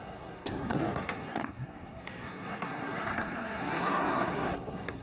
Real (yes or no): no